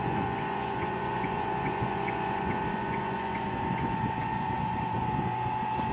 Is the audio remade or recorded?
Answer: remade